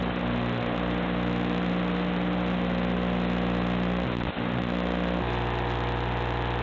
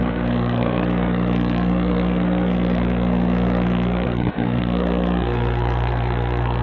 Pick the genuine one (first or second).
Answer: first